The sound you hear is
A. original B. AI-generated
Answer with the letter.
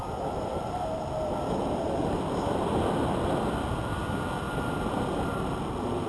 A